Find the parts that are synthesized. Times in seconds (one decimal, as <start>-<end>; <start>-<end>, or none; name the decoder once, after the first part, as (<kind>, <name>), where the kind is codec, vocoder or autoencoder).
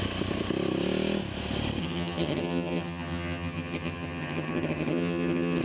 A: 1.8-5.6 (vocoder, HiFi-GAN)